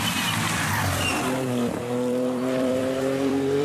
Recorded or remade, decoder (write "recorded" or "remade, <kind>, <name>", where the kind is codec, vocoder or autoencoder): remade, vocoder, BigVGAN v2